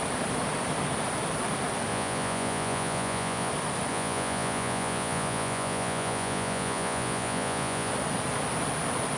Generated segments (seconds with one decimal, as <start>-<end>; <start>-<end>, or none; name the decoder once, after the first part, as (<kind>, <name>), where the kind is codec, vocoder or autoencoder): 1.9-3.5 (vocoder, Vocos); 3.9-7.9